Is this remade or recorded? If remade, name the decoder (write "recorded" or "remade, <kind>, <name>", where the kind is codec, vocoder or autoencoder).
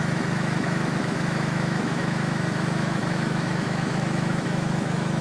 remade, autoencoder, DAC-VAE